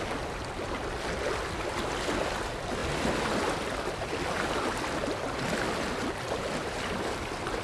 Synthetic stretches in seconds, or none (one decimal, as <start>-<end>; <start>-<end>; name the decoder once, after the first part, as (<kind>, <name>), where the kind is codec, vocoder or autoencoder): none